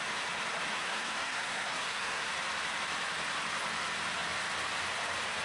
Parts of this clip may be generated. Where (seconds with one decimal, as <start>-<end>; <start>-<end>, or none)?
0.7-2.3